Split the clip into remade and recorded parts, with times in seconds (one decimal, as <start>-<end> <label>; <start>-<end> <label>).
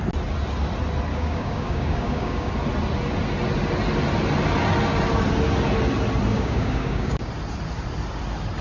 0.0-1.1 recorded; 1.1-2.5 remade; 2.5-6.3 recorded; 6.3-7.3 remade; 7.3-8.6 recorded